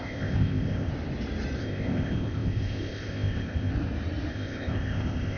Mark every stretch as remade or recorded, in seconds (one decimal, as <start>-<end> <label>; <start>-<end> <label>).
0.0-0.9 remade; 0.9-1.6 recorded; 1.6-3.7 remade; 3.7-4.3 recorded; 4.3-5.4 remade